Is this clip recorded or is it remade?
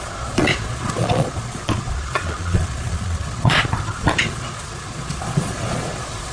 remade